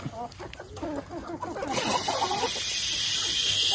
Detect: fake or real real